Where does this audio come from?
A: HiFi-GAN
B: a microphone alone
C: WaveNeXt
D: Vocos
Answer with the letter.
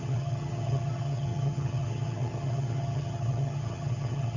A